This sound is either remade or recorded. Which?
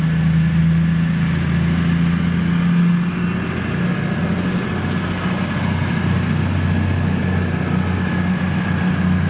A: recorded